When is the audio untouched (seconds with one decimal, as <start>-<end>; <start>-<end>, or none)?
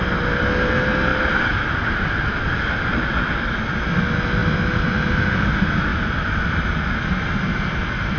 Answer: 0.0-8.2